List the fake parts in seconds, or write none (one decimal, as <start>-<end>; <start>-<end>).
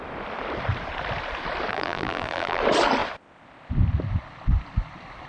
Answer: 1.7-2.6